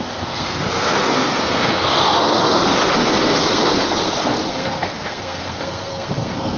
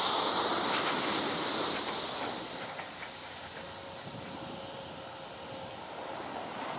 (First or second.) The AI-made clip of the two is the first